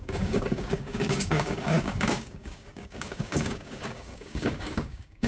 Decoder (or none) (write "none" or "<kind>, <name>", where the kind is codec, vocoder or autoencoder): codec, DAC